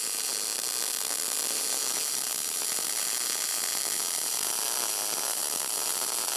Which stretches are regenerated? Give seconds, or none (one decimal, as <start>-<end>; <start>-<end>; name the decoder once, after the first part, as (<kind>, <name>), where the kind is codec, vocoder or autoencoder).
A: 0.0-0.5 (vocoder, BigVGAN v2); 1.5-6.4